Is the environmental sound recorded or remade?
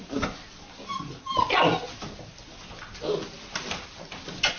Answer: recorded